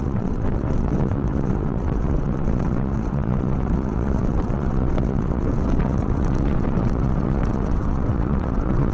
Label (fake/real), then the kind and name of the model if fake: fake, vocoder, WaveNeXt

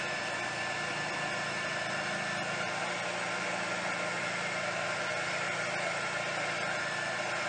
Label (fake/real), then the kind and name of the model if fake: real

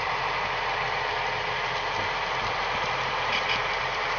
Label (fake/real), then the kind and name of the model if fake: real